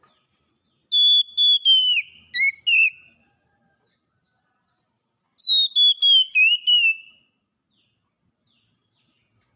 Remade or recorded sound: recorded